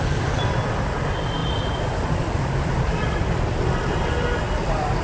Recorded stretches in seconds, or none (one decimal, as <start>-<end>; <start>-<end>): 0.0-5.0